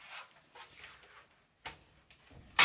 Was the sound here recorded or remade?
recorded